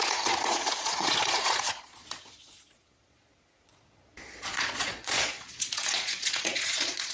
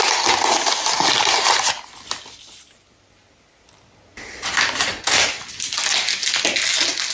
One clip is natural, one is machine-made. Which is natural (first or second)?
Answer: second